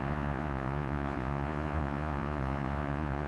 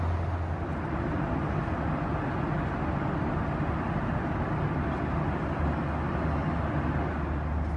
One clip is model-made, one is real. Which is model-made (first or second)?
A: first